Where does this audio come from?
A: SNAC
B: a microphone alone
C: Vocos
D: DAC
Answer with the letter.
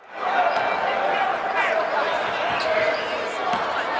B